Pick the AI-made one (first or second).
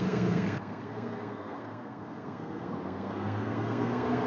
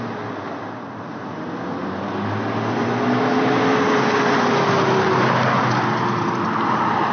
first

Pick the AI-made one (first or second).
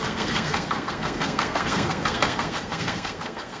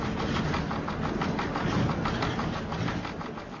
first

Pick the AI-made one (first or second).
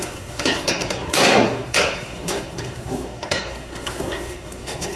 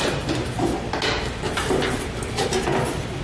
first